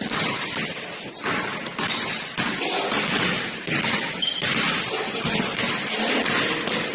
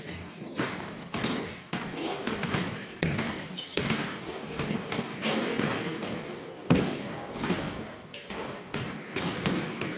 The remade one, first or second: second